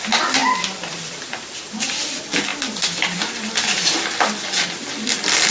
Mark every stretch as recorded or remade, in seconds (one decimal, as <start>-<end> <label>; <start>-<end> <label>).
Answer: 0.0-5.5 recorded